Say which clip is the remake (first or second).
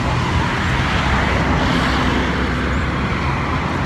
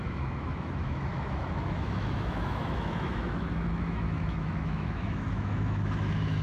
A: second